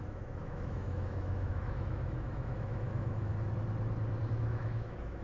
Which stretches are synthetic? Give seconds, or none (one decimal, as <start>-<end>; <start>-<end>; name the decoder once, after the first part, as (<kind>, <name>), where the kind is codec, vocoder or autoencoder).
0.0-3.3 (autoencoder, DAC-VAE); 4.3-5.2